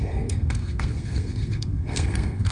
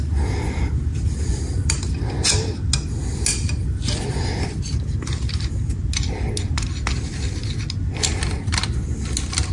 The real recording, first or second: second